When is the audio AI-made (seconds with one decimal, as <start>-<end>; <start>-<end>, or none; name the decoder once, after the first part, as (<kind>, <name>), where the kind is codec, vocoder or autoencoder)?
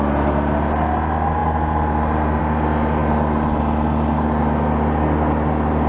none